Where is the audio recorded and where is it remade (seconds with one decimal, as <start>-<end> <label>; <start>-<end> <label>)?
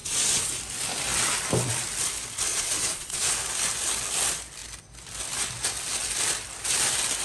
0.0-0.5 remade; 0.5-2.5 recorded; 2.5-3.3 remade; 3.3-7.2 recorded